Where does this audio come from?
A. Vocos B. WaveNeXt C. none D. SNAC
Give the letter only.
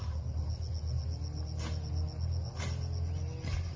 C